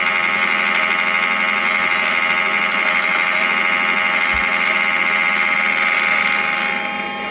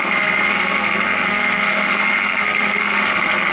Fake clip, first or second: second